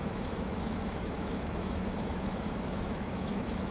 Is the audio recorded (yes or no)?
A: no